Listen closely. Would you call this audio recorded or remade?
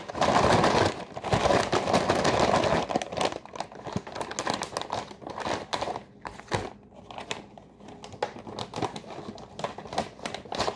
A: recorded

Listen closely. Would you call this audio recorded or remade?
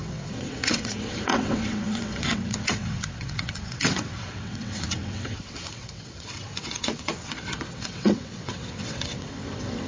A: remade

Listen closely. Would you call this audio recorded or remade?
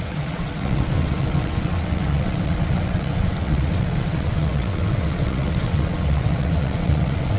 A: remade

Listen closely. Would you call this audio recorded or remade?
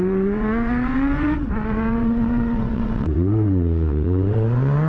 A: remade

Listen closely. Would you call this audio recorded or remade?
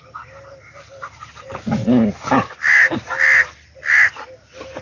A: recorded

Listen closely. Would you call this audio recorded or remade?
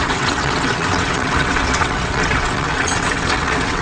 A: remade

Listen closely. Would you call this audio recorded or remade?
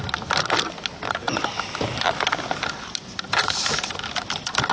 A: recorded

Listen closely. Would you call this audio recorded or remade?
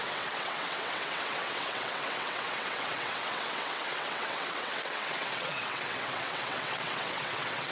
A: remade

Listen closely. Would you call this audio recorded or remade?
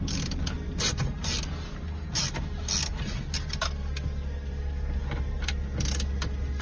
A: recorded